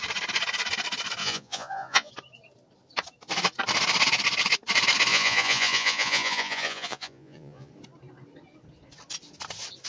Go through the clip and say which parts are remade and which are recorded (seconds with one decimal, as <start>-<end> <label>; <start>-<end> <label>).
0.0-1.2 recorded; 1.2-2.1 remade; 2.1-5.1 recorded; 5.1-7.7 remade; 7.7-9.9 recorded